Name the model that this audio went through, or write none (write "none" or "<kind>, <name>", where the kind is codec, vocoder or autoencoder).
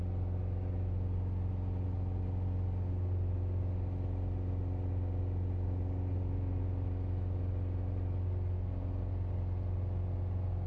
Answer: none